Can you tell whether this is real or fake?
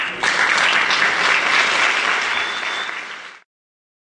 real